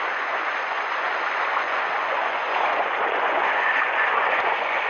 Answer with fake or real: fake